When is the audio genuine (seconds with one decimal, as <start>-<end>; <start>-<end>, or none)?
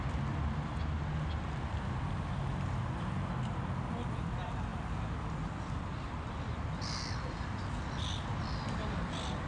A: 0.0-9.5